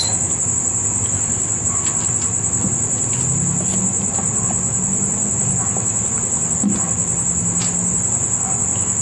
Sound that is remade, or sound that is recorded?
recorded